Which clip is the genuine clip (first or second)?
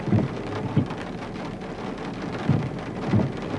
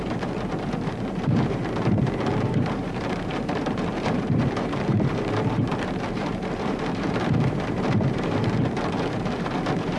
first